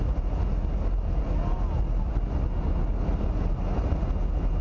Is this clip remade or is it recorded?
recorded